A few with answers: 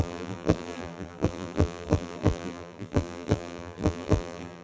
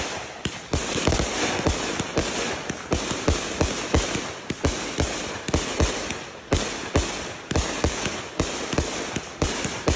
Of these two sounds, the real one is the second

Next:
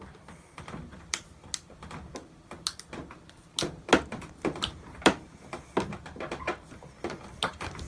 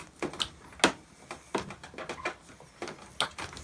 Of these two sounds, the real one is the second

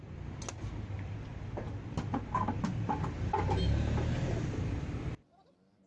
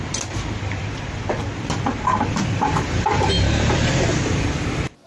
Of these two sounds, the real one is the first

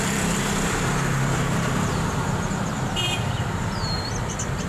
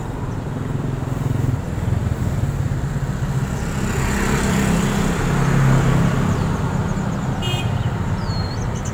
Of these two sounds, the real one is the second